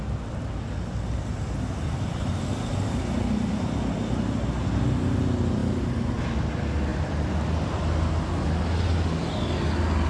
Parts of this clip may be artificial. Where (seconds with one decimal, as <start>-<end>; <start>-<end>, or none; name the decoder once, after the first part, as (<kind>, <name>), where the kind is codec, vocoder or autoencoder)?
none